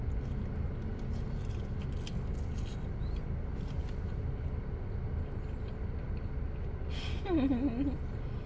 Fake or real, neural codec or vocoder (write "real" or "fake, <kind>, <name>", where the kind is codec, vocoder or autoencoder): real